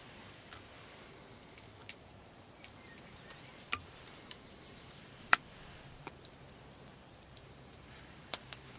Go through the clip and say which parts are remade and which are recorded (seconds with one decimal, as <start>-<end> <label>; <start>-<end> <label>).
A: 0.0-1.8 recorded; 1.8-6.3 remade; 6.3-6.9 recorded; 6.9-8.8 remade